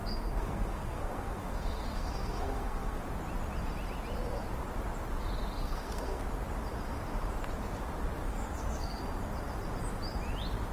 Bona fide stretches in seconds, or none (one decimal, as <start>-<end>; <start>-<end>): 3.0-5.6; 6.2-8.3; 9.0-10.7